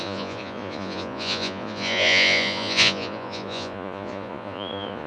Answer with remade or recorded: remade